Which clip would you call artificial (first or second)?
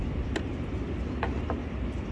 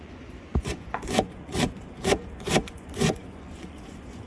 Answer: second